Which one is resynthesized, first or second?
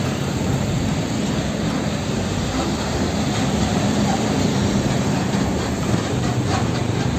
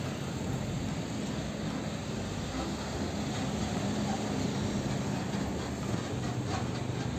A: first